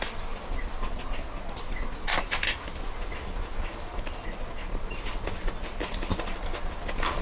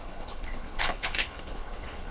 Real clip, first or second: first